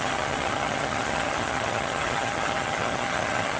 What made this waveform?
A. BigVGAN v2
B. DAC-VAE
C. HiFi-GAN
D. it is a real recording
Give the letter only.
C